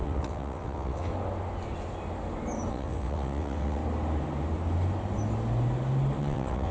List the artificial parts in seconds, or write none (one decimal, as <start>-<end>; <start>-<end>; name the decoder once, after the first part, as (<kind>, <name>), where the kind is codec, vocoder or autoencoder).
0.0-1.1 (vocoder, WaveNeXt); 2.7-3.8; 6.2-6.7

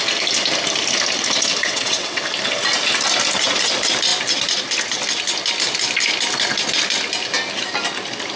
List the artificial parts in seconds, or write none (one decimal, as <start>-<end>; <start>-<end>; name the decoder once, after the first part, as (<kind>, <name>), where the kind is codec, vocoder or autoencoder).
1.6-2.2 (vocoder, WaveNeXt)

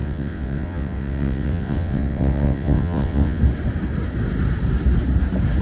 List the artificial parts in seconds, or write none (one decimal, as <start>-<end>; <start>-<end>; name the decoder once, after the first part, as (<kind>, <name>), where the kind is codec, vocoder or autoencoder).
0.0-3.4 (vocoder, WaveNeXt)

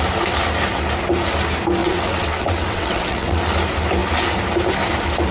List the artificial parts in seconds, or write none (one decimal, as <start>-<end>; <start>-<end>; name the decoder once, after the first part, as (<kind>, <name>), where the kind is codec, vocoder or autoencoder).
1.8-3.4 (vocoder, WaveNeXt)

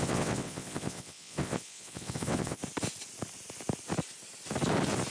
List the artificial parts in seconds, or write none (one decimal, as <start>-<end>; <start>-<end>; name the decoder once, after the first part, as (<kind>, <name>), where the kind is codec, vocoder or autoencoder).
0.0-2.6 (vocoder, WaveNeXt)

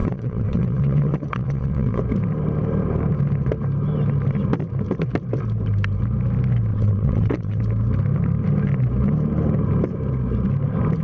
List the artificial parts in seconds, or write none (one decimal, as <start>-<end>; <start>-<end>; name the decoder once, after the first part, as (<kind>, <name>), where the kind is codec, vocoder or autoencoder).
0.0-2.0 (vocoder, WaveNeXt); 6.7-7.6

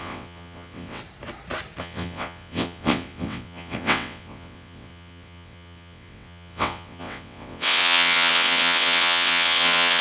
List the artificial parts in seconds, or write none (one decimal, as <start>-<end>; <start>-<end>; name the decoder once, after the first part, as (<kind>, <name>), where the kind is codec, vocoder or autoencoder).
0.0-1.0 (vocoder, WaveNeXt); 1.8-10.0